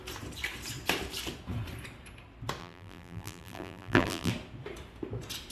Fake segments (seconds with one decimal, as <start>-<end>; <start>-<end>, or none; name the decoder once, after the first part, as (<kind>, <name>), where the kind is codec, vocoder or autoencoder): 2.6-4.3 (vocoder, BigVGAN v2)